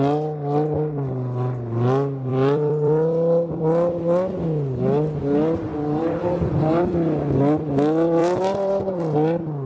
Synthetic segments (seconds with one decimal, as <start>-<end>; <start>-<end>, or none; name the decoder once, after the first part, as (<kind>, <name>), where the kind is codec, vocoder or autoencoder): 2.3-4.0 (vocoder, BigVGAN v2); 5.7-6.8; 8.2-8.9